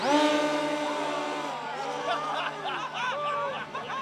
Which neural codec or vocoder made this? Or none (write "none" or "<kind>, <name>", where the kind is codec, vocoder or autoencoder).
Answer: none